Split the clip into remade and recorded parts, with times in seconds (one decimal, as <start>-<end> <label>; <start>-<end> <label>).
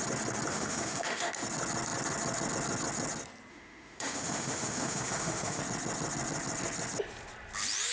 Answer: 0.0-0.5 recorded; 0.5-1.3 remade; 1.3-3.5 recorded; 3.5-5.6 remade; 5.6-7.9 recorded